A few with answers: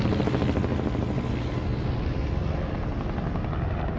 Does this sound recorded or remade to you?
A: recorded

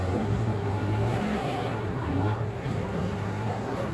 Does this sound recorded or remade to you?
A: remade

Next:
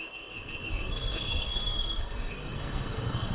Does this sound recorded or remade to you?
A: remade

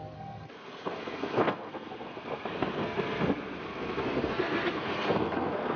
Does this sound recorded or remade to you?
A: remade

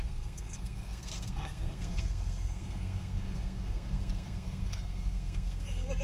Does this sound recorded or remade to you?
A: remade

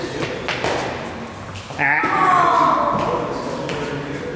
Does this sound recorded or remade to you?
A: recorded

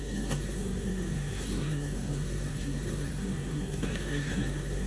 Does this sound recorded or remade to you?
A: remade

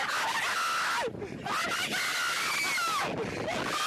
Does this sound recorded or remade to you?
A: recorded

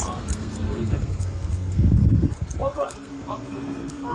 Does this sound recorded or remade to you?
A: remade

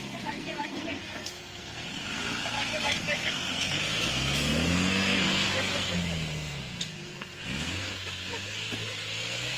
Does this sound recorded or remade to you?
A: remade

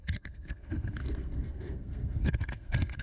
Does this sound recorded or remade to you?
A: remade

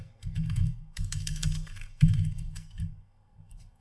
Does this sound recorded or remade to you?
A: remade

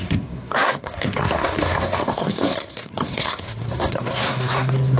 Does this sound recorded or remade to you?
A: remade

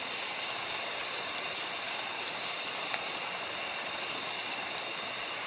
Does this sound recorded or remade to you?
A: recorded